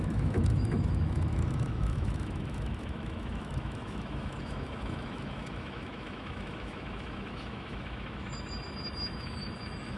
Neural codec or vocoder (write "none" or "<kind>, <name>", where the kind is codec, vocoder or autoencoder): autoencoder, DAC-VAE